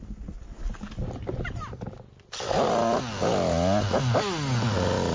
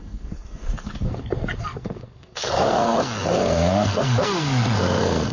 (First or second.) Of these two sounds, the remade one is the second